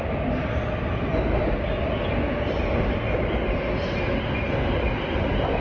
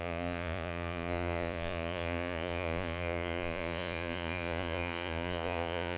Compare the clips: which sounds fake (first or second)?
second